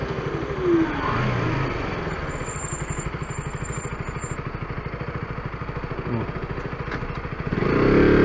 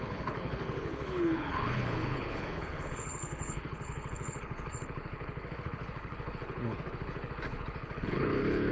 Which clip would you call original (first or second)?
first